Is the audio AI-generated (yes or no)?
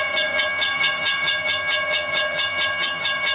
yes